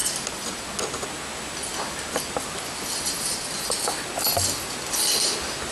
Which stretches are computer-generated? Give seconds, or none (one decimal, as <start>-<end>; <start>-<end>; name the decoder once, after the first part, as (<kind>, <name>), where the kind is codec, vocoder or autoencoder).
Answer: none